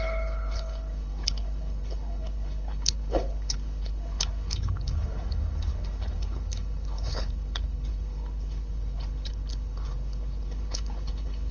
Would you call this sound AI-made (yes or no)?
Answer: yes